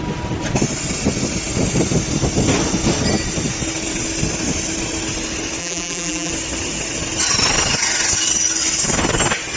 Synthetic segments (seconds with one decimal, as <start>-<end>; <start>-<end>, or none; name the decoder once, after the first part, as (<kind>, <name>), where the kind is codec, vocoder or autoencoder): 5.6-6.3 (vocoder, BigVGAN v2)